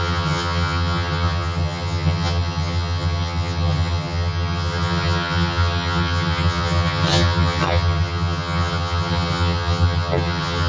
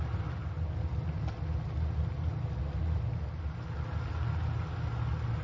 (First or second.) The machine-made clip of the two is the first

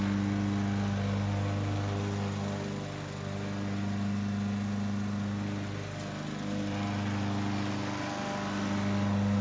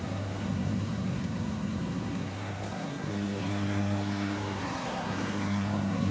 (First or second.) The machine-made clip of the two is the second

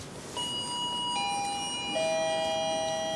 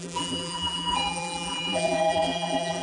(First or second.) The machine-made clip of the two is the second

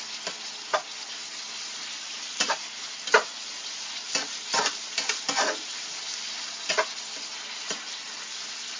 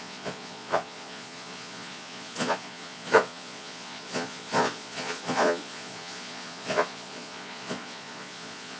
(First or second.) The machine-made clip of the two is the second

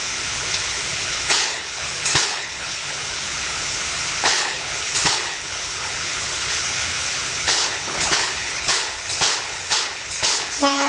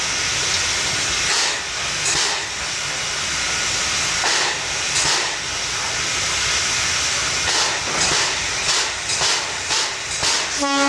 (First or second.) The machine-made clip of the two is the first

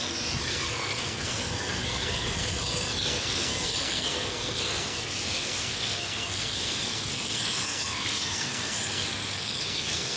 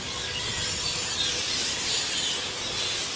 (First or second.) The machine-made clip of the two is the first